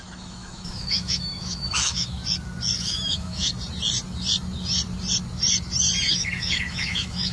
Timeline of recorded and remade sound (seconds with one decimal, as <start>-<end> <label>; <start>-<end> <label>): 0.0-2.2 remade; 2.2-2.8 recorded; 2.8-3.5 remade; 3.5-6.1 recorded; 6.1-7.3 remade